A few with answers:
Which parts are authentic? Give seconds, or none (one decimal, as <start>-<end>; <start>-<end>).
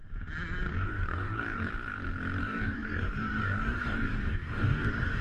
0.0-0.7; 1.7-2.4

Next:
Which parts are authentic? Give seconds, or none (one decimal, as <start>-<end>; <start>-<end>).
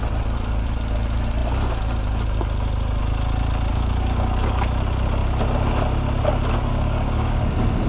0.0-3.7; 4.6-6.7; 7.4-7.9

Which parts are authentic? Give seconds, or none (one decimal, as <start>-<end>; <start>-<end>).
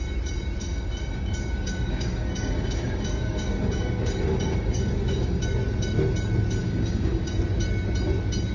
0.0-0.6; 5.4-6.6; 7.3-8.5